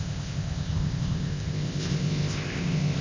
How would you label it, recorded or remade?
remade